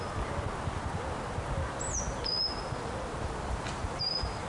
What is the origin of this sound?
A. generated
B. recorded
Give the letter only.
B